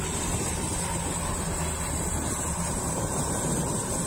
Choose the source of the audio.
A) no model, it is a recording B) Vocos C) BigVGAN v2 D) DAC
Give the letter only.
A